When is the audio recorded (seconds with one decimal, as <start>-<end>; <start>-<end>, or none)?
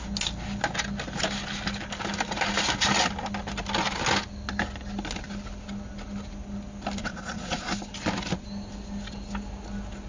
0.0-7.0; 7.7-10.1